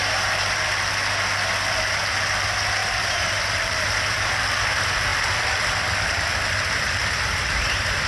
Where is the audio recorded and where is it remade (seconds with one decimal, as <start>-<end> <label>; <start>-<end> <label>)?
0.0-2.8 recorded; 2.8-4.4 remade; 4.4-7.0 recorded; 7.0-8.1 remade